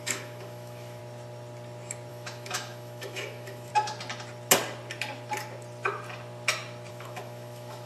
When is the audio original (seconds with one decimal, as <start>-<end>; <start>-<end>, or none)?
1.0-2.1; 3.7-6.9